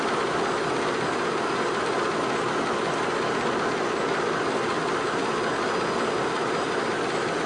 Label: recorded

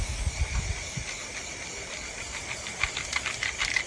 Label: recorded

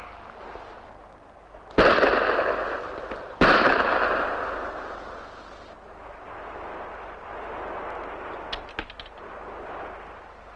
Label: recorded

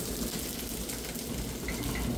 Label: recorded